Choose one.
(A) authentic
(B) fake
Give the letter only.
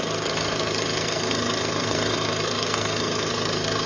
B